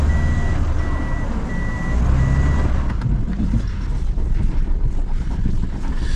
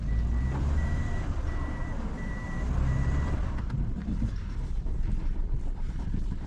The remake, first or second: second